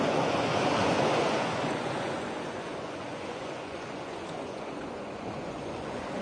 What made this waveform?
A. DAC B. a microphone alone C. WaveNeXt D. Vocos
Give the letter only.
D